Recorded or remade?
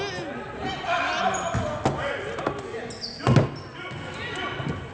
recorded